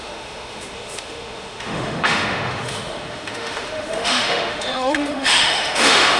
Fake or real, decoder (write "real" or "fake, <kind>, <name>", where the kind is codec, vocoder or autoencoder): fake, autoencoder, DAC-VAE